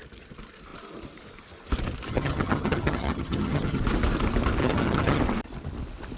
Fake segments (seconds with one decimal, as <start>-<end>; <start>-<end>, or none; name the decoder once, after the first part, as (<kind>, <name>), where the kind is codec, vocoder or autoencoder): 2.1-3.8 (vocoder, HiFi-GAN); 4.6-5.2